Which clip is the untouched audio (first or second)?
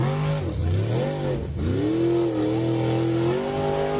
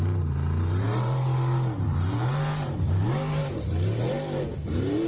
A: first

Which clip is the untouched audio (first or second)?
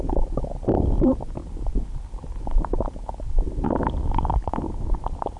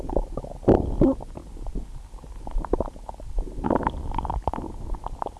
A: second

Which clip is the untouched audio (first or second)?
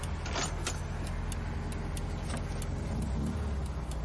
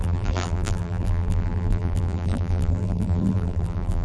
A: first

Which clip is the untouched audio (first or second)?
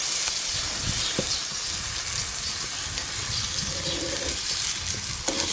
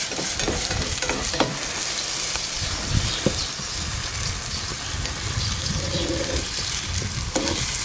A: first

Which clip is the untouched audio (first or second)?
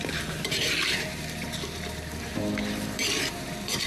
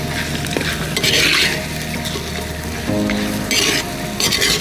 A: second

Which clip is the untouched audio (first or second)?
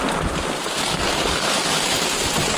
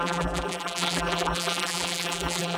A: first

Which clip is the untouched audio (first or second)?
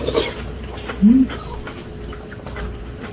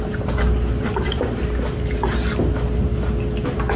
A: second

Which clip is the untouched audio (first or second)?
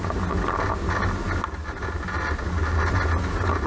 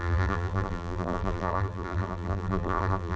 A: first